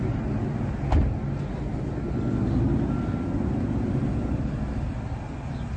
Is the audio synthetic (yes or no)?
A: no